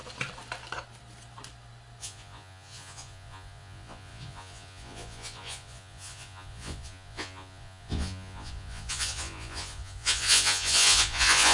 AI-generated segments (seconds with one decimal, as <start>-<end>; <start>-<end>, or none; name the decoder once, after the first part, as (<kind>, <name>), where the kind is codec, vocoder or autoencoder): 2.0-11.5 (vocoder, Vocos)